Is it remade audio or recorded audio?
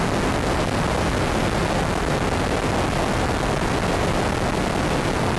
recorded